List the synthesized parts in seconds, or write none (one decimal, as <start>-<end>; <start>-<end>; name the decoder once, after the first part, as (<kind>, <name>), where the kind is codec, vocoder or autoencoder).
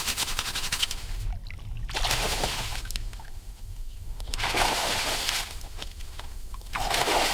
0.0-1.3 (autoencoder, DAC-VAE); 2.1-7.3